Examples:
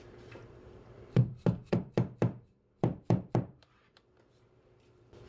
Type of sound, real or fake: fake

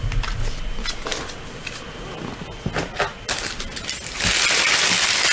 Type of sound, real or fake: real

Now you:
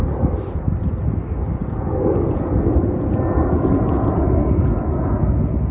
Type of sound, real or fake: real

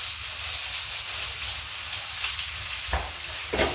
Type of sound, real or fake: real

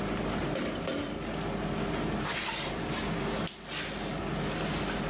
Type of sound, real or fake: real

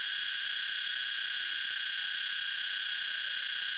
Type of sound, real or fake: real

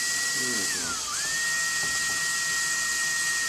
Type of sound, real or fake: real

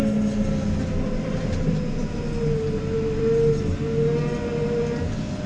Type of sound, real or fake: real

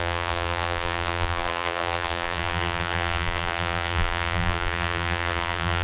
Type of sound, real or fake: fake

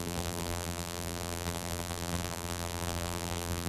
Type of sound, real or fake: fake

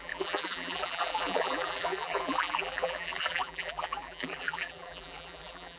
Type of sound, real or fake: fake